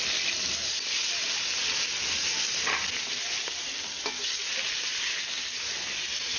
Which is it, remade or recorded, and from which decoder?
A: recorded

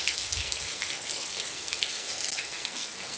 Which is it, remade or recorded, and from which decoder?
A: remade, codec, SNAC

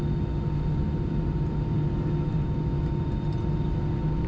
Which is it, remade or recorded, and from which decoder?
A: recorded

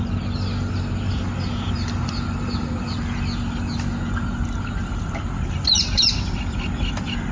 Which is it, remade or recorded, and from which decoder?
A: recorded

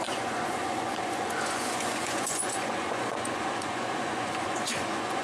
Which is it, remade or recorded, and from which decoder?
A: remade, vocoder, Vocos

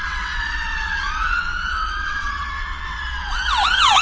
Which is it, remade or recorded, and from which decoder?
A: remade, vocoder, WaveNeXt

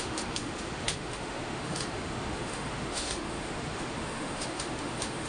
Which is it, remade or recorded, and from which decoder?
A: remade, autoencoder, DAC-VAE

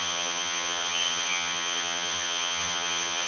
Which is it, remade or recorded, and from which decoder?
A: remade, vocoder, HiFi-GAN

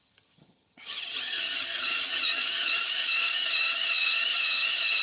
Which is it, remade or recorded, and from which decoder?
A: remade, vocoder, HiFi-GAN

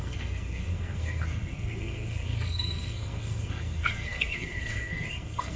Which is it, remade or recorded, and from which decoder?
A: remade, codec, SNAC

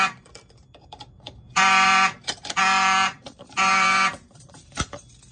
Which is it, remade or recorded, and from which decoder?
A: remade, vocoder, BigVGAN v2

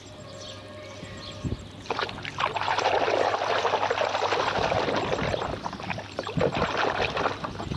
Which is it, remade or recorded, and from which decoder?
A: recorded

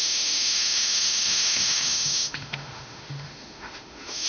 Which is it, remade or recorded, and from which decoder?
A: remade, autoencoder, DAC-VAE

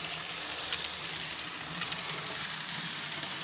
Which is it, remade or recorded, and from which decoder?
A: recorded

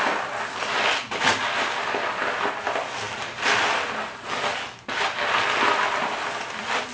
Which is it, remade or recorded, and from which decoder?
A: recorded